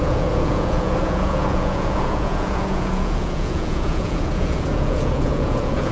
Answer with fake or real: fake